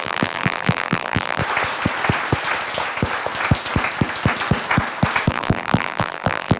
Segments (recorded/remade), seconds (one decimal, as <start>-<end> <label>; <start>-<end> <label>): 0.0-1.4 remade; 1.4-5.3 recorded; 5.3-6.6 remade